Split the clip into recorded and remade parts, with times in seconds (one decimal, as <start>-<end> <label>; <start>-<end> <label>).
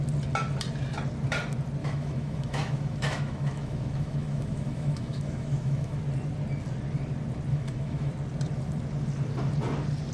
0.0-1.8 recorded; 1.8-6.0 remade; 6.0-7.5 recorded; 7.5-8.1 remade; 8.1-10.1 recorded